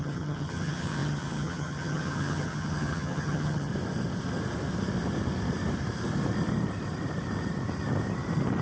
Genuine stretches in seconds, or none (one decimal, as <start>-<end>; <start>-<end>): 3.7-8.6